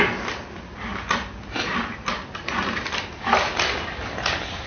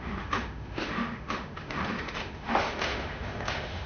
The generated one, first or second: second